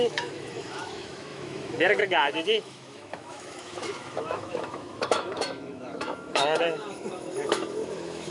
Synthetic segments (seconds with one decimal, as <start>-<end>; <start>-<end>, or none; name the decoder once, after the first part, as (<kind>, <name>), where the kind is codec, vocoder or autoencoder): 0.0-8.3 (autoencoder, DAC-VAE)